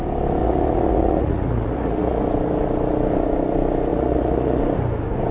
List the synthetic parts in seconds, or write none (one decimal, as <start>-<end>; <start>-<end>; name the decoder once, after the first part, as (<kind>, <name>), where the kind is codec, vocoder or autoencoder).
0.4-2.2 (vocoder, Vocos); 3.9-4.6

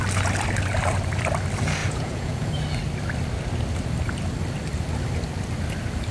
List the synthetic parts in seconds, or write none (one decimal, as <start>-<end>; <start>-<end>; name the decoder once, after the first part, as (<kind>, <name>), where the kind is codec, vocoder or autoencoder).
1.8-2.5 (vocoder, Vocos)

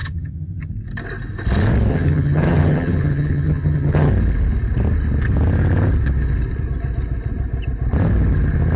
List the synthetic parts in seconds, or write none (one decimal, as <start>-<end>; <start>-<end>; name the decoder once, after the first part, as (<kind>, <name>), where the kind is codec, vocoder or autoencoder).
0.0-0.7 (vocoder, HiFi-GAN); 1.9-4.1

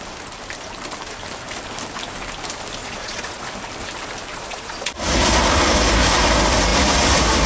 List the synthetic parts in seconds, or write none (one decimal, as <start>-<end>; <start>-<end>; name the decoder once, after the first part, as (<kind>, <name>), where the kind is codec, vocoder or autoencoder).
2.8-3.4 (vocoder, Vocos); 4.3-4.9

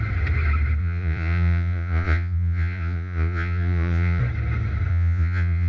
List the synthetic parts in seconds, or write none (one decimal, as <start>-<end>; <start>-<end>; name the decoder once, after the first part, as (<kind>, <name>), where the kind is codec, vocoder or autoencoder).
0.8-4.2 (vocoder, Vocos); 4.9-5.7